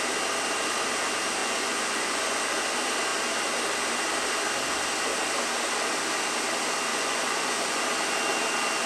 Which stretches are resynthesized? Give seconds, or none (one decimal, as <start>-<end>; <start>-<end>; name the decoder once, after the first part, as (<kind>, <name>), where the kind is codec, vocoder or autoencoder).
1.4-2.4 (vocoder, Vocos); 6.9-7.8